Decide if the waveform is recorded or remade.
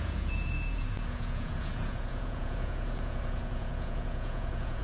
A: remade